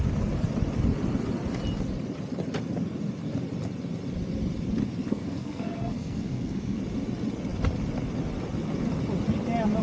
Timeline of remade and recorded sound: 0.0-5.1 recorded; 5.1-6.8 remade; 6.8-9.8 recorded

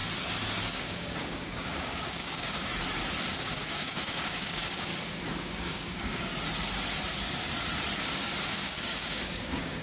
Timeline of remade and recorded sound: 0.0-0.7 recorded; 0.7-2.7 remade; 2.7-3.3 recorded; 3.3-4.9 remade; 4.9-5.4 recorded; 5.4-6.3 remade; 6.3-8.6 recorded; 8.6-9.8 remade

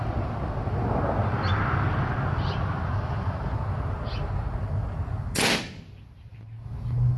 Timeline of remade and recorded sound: 0.0-7.2 recorded